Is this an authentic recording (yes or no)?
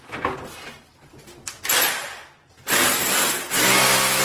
yes